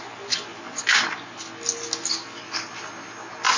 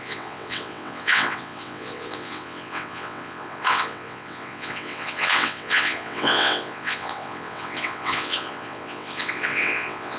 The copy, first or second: second